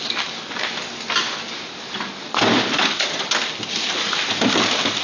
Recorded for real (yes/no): yes